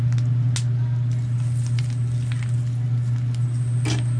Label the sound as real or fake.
real